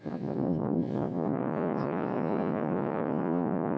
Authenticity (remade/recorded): remade